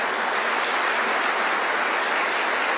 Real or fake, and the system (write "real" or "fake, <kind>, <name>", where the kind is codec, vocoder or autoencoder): real